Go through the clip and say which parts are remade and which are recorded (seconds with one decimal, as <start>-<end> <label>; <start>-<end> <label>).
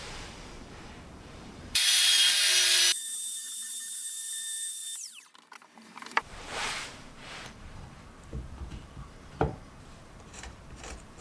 0.0-4.8 remade; 4.8-5.6 recorded; 5.6-11.2 remade